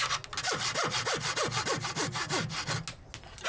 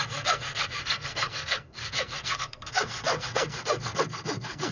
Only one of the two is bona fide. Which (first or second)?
first